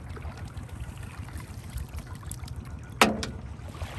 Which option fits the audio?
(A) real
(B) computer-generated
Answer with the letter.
A